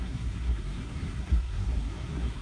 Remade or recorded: remade